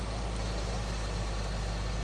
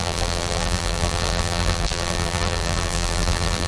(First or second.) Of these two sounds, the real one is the first